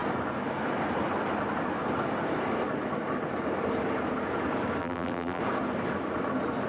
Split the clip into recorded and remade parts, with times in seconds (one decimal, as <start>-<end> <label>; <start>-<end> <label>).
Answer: 0.0-4.8 recorded; 4.8-5.4 remade; 5.4-6.7 recorded

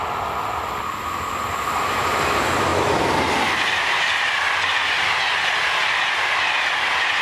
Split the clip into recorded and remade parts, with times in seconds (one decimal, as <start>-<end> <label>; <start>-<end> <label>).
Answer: 0.0-2.7 remade; 2.7-7.2 recorded

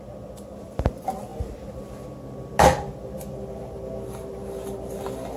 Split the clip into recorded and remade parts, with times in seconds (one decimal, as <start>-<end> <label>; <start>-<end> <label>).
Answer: 0.0-5.4 recorded

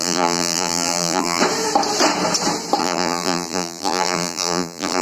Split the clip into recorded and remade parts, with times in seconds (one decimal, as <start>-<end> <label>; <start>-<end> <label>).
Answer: 0.0-1.4 remade; 1.4-2.8 recorded; 2.8-5.0 remade